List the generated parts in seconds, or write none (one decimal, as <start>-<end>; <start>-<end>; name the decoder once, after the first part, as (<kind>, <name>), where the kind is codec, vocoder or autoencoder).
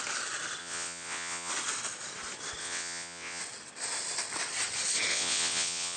0.6-1.5 (vocoder, WaveNeXt); 2.6-3.4; 5.1-6.0